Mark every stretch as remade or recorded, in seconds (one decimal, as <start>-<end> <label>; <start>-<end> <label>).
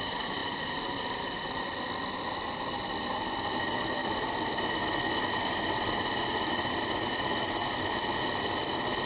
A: 0.0-9.1 recorded